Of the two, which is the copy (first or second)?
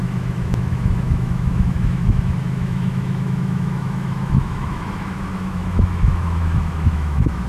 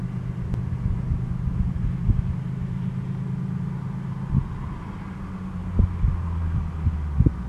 first